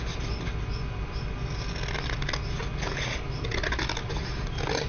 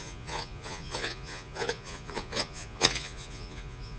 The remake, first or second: second